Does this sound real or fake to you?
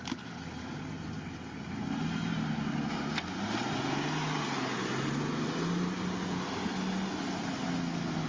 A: real